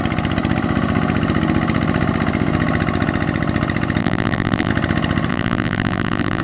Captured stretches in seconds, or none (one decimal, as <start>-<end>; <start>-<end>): 0.0-4.0; 4.7-5.3